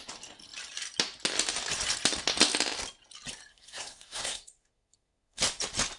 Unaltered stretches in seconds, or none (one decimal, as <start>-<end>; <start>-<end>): 0.0-3.5; 5.4-6.0

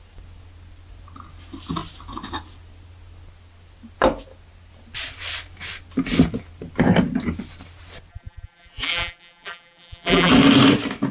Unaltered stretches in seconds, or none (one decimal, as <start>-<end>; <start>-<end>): 0.0-8.1; 10.3-11.1

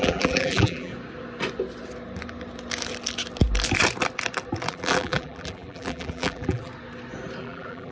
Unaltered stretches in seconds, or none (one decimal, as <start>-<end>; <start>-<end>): 0.9-4.7; 6.7-7.4

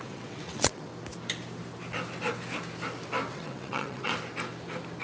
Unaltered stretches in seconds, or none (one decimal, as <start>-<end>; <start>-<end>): 0.9-3.3; 4.1-5.0

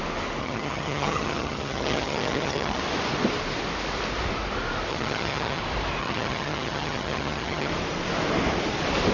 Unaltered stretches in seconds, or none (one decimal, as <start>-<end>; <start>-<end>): 0.0-0.4; 2.8-4.9; 5.6-6.0; 7.7-9.1

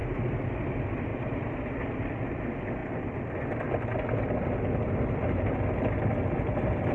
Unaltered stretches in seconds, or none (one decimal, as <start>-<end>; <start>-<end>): 0.0-6.9

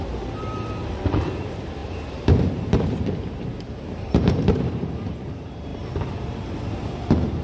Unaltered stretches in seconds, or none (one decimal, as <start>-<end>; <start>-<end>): none